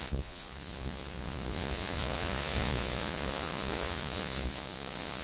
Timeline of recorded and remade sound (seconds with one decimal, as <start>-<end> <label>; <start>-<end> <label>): 0.0-5.2 remade